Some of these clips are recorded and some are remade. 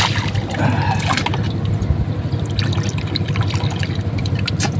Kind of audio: recorded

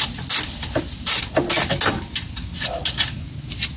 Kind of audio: recorded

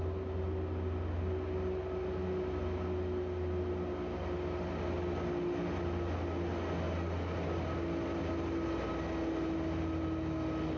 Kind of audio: recorded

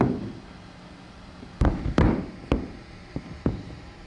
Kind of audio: recorded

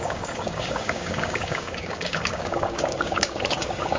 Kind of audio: remade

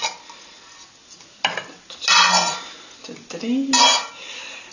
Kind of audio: recorded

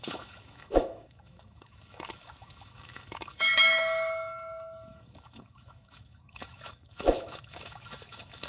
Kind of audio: remade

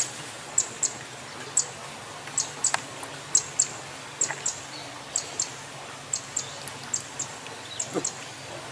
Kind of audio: recorded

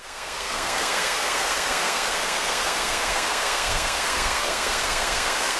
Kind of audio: remade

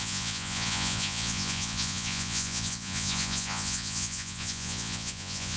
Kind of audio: remade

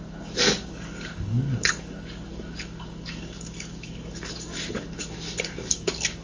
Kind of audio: remade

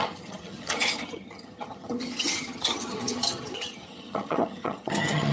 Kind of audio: remade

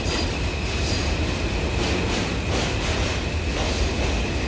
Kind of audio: recorded